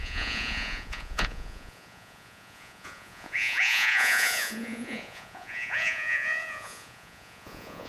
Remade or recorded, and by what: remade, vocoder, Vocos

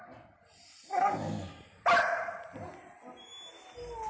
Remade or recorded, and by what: recorded